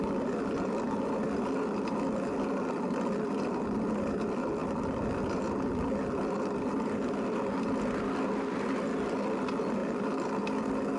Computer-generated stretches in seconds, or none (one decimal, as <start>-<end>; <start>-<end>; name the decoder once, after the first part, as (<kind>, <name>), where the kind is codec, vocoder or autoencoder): none